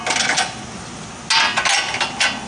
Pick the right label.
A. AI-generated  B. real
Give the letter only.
B